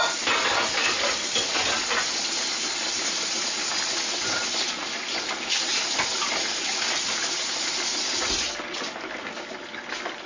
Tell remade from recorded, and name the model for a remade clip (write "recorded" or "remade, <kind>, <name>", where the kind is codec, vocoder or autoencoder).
recorded